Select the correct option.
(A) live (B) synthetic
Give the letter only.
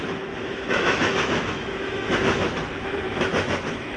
B